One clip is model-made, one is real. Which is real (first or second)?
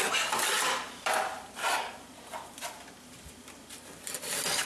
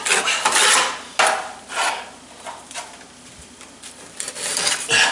second